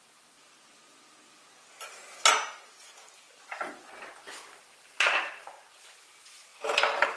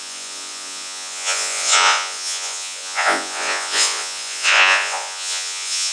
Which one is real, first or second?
first